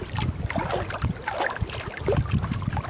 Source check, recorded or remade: recorded